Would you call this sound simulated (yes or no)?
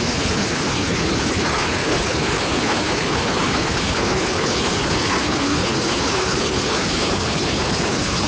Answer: yes